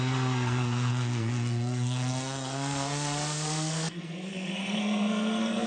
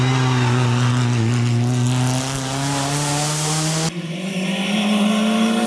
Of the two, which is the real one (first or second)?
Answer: second